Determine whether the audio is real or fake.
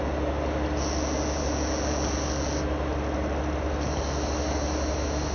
real